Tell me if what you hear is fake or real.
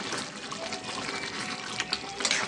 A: real